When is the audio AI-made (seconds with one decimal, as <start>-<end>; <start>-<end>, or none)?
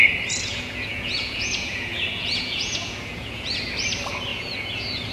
0.5-3.6; 4.3-5.1